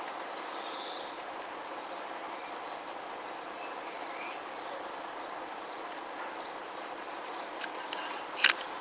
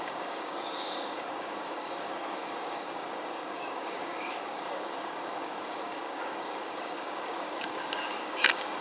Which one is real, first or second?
first